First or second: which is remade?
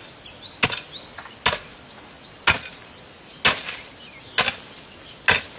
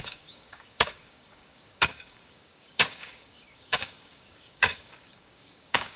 second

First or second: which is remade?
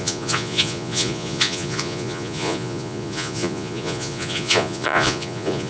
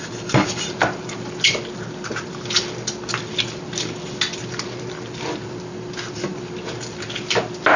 first